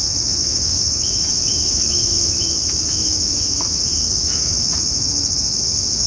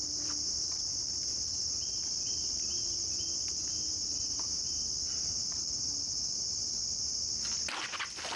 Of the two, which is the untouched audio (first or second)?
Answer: second